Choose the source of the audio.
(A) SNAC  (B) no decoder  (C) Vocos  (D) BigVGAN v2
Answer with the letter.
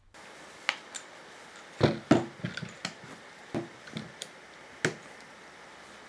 B